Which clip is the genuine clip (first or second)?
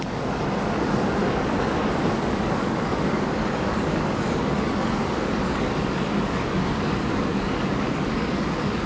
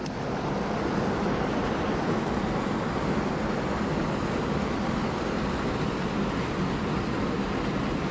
second